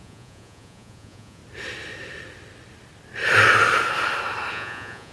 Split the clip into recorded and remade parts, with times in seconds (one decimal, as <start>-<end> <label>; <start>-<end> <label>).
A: 0.0-1.4 remade; 1.4-4.5 recorded; 4.5-5.1 remade